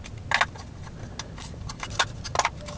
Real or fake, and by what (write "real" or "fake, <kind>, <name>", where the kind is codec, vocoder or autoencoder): real